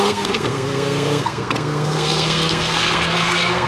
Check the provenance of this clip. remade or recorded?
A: remade